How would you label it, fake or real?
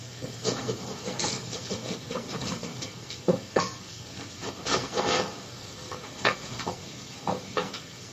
fake